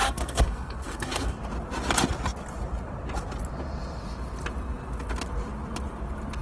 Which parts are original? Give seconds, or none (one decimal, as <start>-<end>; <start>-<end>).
1.4-6.4